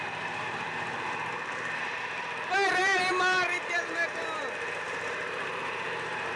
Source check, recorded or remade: remade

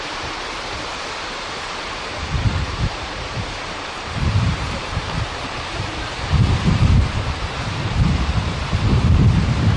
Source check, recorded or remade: remade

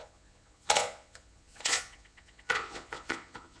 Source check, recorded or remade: remade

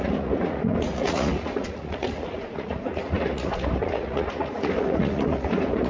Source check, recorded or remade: remade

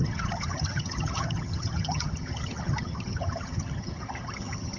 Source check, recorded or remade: remade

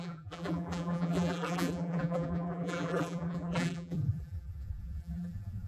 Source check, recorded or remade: remade